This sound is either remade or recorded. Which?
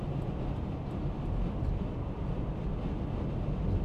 recorded